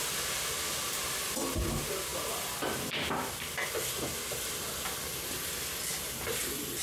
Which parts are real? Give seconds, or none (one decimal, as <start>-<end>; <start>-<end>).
0.0-6.8